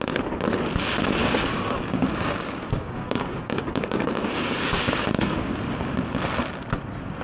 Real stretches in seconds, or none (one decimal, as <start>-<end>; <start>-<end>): 0.0-1.2; 5.5-7.2